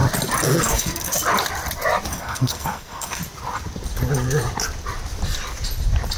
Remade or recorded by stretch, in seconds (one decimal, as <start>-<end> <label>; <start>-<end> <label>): 0.0-0.6 recorded; 0.6-1.1 remade; 1.1-2.1 recorded; 2.1-3.2 remade; 3.2-6.2 recorded